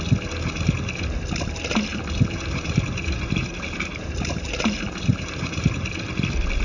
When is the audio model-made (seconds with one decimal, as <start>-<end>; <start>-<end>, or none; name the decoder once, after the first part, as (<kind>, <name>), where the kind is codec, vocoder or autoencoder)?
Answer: 1.9-5.9 (vocoder, BigVGAN v2)